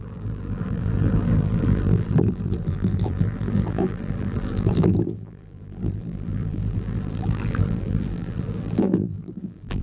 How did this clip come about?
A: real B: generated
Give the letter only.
B